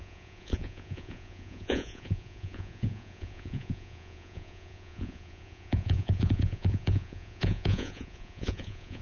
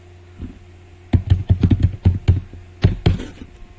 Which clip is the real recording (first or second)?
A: second